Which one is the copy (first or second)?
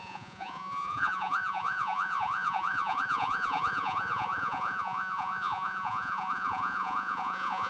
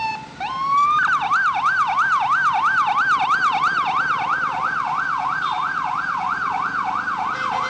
first